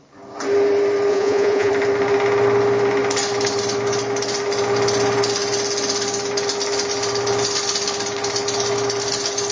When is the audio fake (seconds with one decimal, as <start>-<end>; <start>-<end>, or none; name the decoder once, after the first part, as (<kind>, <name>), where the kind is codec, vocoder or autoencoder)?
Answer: 1.1-1.7 (vocoder, Vocos)